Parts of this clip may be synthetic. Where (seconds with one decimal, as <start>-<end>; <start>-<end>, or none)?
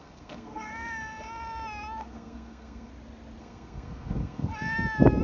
0.0-0.7; 2.0-2.9; 3.4-4.5